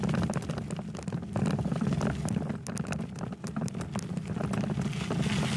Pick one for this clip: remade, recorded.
recorded